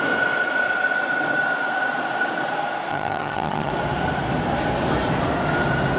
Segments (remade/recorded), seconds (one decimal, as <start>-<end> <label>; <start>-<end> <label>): 0.0-2.9 recorded; 2.9-3.7 remade; 3.7-6.0 recorded